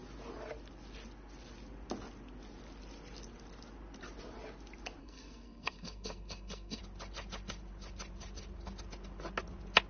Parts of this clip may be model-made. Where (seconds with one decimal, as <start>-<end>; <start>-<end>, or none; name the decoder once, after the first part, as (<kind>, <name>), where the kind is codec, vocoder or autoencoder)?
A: 5.0-6.8 (codec, SNAC)